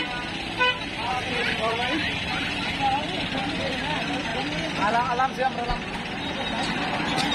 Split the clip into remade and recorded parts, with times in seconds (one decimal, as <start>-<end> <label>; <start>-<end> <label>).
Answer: 0.0-1.4 recorded; 1.4-2.2 remade; 2.2-4.3 recorded; 4.3-7.3 remade